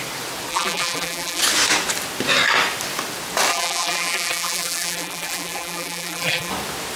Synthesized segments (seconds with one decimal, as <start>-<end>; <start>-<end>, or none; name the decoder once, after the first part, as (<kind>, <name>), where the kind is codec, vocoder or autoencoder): 0.5-1.4 (vocoder, BigVGAN v2); 3.5-6.5